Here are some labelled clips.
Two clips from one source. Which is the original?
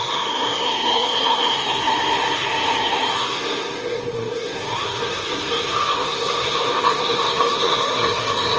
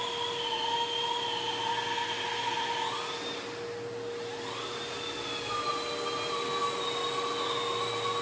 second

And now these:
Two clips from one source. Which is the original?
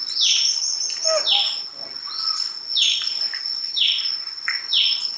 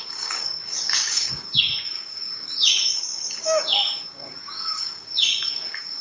first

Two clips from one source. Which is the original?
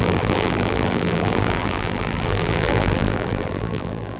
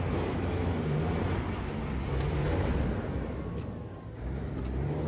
second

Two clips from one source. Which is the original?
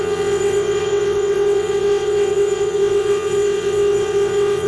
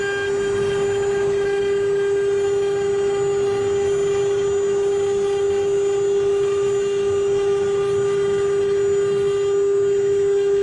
second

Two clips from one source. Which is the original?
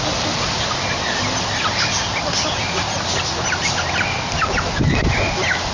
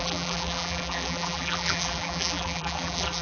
first